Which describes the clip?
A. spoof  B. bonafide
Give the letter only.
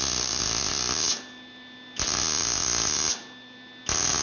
B